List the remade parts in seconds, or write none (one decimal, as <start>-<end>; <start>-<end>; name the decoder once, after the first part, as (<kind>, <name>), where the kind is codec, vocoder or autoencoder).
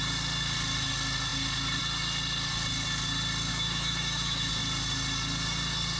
3.5-4.5 (autoencoder, DAC-VAE)